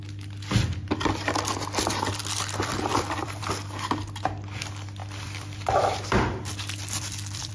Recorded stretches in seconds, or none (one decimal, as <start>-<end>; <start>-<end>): 0.0-2.2; 3.4-5.0